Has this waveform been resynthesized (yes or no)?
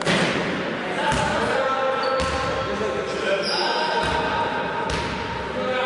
no